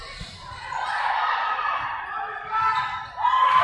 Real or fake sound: real